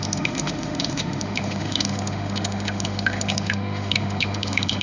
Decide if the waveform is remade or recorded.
remade